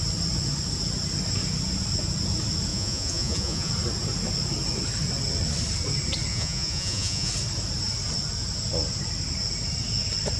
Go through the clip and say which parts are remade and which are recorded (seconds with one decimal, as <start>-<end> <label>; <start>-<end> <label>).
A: 0.0-2.7 recorded; 2.7-3.7 remade; 3.7-6.3 recorded; 6.3-7.3 remade; 7.3-10.4 recorded